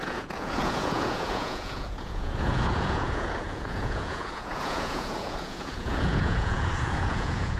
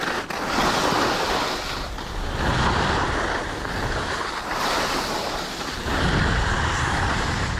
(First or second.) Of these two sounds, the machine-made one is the first